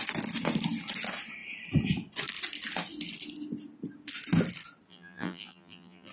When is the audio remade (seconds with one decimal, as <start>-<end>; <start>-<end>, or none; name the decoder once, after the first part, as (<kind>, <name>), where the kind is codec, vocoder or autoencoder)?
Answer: 4.9-6.1 (vocoder, BigVGAN v2)